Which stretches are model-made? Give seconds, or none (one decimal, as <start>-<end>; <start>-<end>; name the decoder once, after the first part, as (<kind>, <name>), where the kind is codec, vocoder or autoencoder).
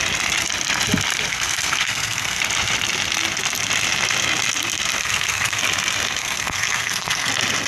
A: 1.3-2.4 (codec, SNAC); 5.0-5.6; 6.2-7.3